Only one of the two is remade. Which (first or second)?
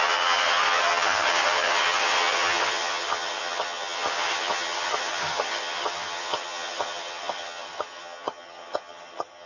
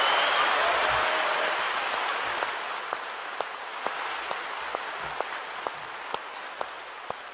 first